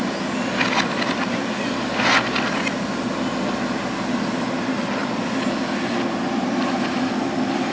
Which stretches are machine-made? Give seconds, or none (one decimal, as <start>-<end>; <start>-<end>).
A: none